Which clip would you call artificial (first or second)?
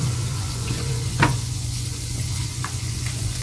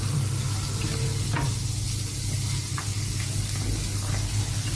first